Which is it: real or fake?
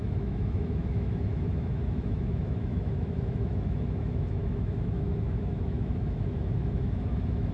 fake